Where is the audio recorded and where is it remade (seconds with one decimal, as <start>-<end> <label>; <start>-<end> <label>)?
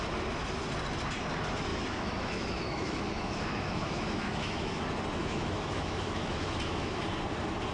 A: 0.0-1.7 recorded; 1.7-4.8 remade; 4.8-5.2 recorded; 5.2-7.0 remade; 7.0-7.7 recorded